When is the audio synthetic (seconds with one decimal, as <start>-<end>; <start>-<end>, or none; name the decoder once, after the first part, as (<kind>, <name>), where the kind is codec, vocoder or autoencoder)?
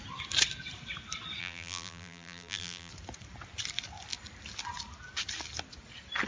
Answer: 1.4-2.9 (vocoder, BigVGAN v2)